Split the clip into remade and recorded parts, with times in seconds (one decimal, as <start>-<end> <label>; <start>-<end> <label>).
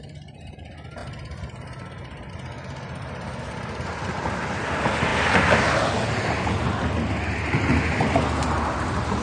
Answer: 0.0-9.2 recorded